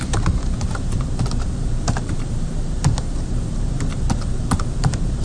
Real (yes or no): no